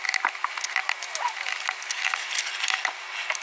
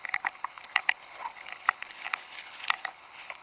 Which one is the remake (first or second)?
second